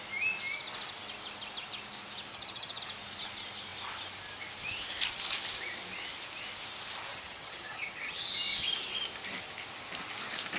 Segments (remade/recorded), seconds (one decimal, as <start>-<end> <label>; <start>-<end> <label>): 0.0-2.3 recorded; 2.3-2.8 remade; 2.8-7.1 recorded; 7.1-8.3 remade; 8.3-10.6 recorded

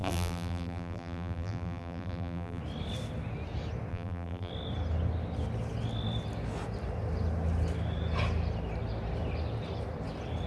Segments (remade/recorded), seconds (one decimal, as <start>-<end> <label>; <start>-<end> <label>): 0.0-2.6 remade; 2.6-3.9 recorded; 3.9-4.5 remade; 4.5-10.5 recorded

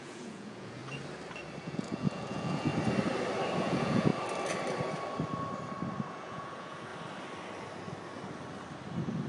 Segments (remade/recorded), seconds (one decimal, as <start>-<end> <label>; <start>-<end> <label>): 0.0-0.8 remade; 0.8-1.6 recorded; 1.6-2.7 remade; 2.7-3.6 recorded; 3.6-4.1 remade; 4.1-6.1 recorded; 6.1-6.9 remade; 6.9-9.3 recorded

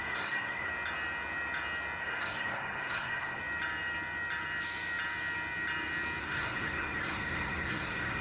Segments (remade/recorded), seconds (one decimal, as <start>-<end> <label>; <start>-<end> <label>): 0.0-0.7 remade; 0.7-2.0 recorded; 2.0-3.4 remade; 3.4-6.2 recorded; 6.2-8.2 remade

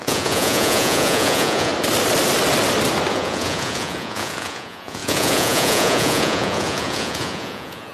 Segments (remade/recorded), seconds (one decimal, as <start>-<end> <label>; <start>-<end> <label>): 0.0-1.7 remade; 1.7-3.1 recorded; 3.1-7.9 remade

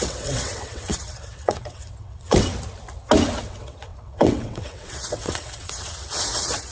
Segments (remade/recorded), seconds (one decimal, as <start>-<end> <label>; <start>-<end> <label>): 0.0-2.5 remade; 2.5-3.4 recorded; 3.4-6.7 remade